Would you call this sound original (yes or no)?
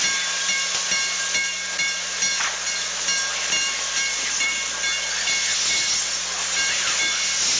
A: yes